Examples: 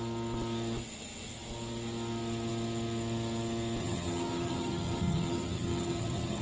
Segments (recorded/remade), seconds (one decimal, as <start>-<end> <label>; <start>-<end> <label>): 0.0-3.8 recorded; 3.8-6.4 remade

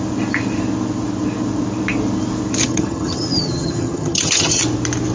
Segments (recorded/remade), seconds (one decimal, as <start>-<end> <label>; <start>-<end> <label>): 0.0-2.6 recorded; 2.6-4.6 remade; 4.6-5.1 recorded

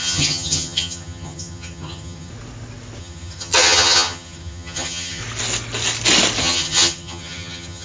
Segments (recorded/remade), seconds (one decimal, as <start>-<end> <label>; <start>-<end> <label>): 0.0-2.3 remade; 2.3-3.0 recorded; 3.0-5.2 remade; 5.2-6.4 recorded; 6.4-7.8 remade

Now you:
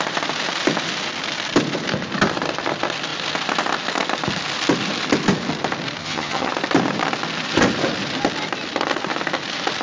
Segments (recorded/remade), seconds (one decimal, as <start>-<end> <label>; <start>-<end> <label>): 0.0-6.0 recorded; 6.0-6.5 remade; 6.5-9.8 recorded

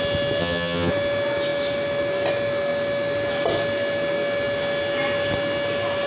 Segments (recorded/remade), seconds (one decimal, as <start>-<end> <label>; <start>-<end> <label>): 0.0-0.4 recorded; 0.4-0.9 remade; 0.9-6.1 recorded

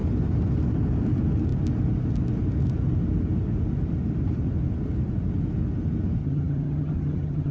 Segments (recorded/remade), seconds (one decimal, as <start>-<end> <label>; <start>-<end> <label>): 0.0-6.2 recorded; 6.2-7.5 remade

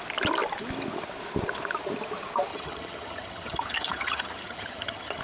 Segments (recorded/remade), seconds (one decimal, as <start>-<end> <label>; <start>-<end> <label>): 0.0-2.5 recorded; 2.5-5.2 remade

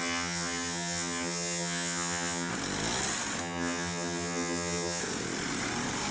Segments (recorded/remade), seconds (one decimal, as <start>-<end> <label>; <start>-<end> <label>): 0.0-2.5 remade; 2.5-3.4 recorded; 3.4-5.0 remade; 5.0-6.1 recorded